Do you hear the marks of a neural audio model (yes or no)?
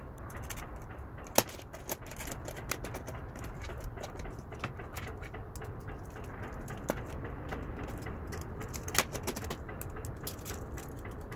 no